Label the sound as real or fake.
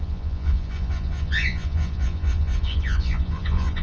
fake